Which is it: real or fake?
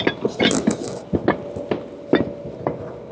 real